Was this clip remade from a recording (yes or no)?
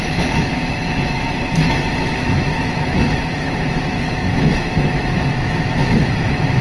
yes